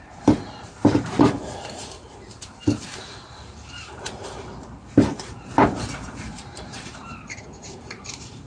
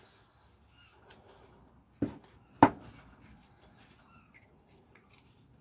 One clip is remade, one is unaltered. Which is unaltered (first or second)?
second